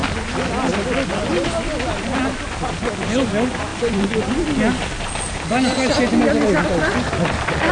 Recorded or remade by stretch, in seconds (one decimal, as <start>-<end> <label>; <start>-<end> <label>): 0.0-7.7 recorded